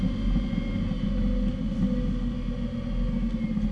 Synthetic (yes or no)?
no